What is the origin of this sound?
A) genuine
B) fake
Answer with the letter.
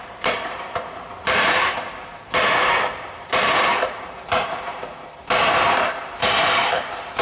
B